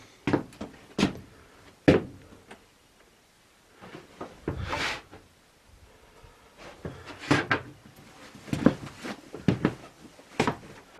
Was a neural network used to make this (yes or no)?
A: no